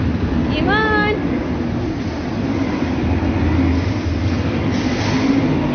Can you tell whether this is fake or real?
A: real